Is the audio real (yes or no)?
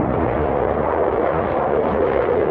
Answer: no